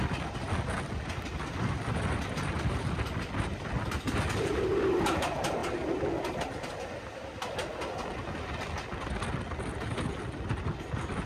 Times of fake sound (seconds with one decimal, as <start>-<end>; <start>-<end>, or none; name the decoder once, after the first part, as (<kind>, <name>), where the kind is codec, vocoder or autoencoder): none